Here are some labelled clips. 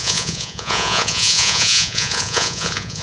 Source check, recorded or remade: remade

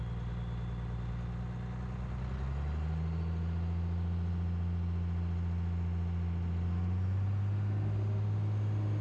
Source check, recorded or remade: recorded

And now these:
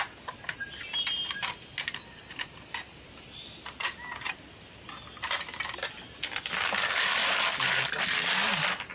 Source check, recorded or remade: recorded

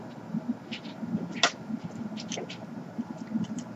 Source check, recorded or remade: recorded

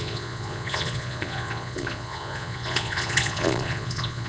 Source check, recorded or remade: remade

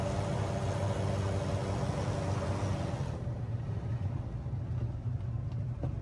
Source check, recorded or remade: recorded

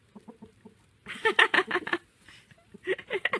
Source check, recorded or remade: recorded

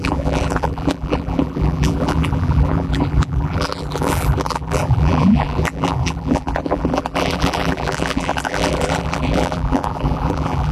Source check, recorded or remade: remade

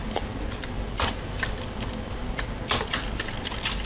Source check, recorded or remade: recorded